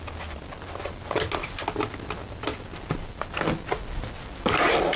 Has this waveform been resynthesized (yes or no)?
no